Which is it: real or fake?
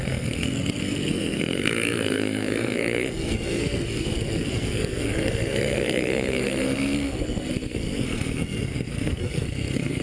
fake